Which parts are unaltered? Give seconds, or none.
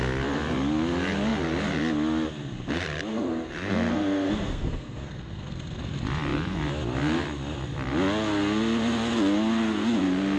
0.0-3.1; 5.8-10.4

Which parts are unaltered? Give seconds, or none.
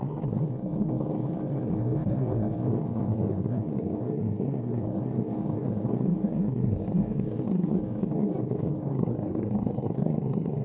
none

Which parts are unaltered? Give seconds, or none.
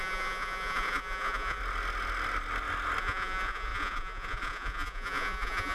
1.6-3.0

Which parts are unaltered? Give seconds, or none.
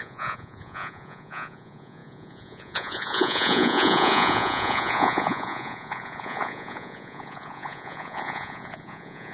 none